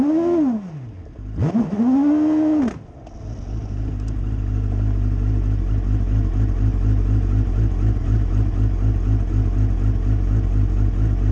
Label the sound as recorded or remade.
recorded